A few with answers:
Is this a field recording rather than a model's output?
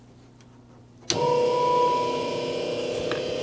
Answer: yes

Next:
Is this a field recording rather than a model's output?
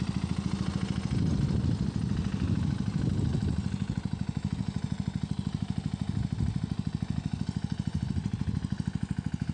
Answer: yes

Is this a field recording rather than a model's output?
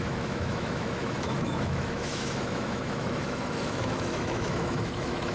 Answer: no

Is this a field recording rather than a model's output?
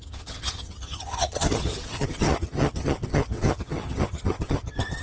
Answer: no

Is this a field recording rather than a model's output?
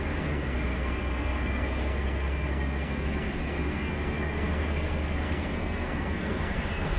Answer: no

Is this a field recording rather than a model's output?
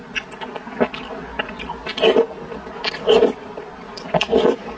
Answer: yes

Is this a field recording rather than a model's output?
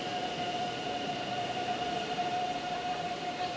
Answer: no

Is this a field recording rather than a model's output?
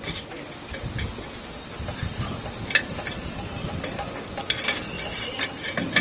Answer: yes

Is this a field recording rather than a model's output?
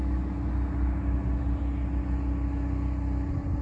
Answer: yes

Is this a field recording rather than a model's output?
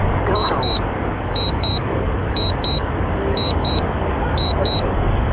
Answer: no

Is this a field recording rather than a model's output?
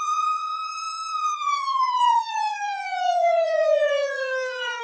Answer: no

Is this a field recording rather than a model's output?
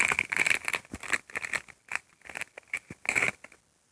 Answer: yes